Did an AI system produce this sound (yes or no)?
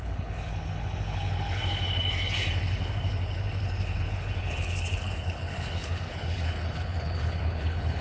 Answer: yes